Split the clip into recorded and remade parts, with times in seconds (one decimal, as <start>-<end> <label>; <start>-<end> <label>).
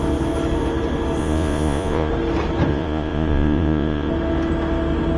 0.0-1.2 recorded; 1.2-2.1 remade; 2.1-2.7 recorded; 2.7-4.1 remade; 4.1-5.2 recorded